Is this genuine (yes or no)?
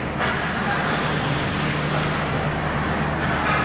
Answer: yes